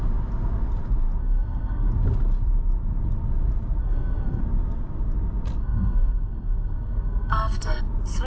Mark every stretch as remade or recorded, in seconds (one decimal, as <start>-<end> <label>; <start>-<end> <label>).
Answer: 0.0-1.2 recorded; 1.2-1.9 remade; 1.9-3.8 recorded; 3.8-4.4 remade; 4.4-5.6 recorded; 5.6-7.8 remade; 7.8-8.3 recorded